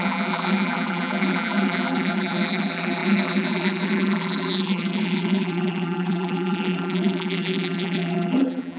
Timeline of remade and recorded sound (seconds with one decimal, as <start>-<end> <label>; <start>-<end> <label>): 0.0-8.8 remade